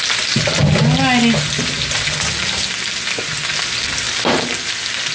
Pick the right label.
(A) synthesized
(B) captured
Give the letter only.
B